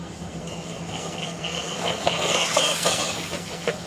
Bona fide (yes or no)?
no